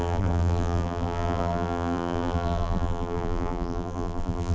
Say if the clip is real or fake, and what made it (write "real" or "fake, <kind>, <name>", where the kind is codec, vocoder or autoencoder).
fake, vocoder, BigVGAN v2